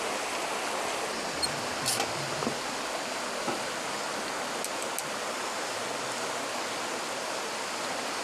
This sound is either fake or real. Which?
real